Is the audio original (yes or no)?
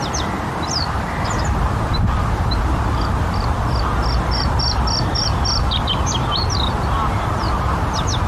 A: yes